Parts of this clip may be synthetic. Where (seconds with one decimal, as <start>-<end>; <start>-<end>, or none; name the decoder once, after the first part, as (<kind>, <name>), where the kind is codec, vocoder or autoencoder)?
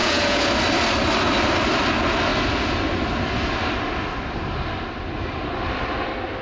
0.0-0.5 (vocoder, Vocos)